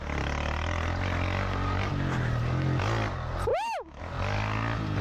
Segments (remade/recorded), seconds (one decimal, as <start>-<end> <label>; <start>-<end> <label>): 0.0-3.5 recorded; 3.5-4.0 remade; 4.0-5.0 recorded